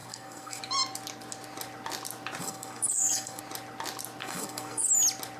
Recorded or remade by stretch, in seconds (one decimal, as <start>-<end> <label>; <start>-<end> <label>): 0.0-0.6 remade; 0.6-2.4 recorded; 2.4-3.4 remade; 3.4-4.2 recorded; 4.2-4.9 remade; 4.9-5.4 recorded